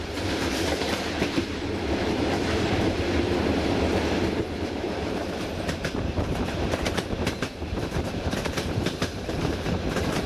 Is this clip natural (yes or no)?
no